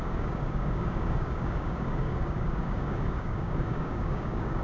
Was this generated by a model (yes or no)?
yes